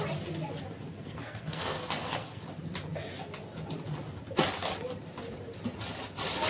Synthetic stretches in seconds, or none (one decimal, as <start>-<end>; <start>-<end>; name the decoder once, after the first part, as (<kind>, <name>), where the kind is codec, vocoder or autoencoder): 0.9-2.4 (codec, SNAC)